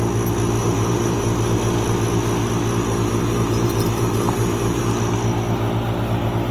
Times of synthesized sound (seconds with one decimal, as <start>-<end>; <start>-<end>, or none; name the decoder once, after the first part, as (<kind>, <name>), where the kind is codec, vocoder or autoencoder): 0.6-1.2 (vocoder, BigVGAN v2); 3.2-4.8